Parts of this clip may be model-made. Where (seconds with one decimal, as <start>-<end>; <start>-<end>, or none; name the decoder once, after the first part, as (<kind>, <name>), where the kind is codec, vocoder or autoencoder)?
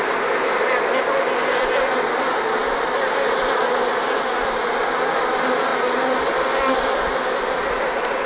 none